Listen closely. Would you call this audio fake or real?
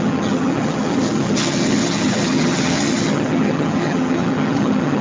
fake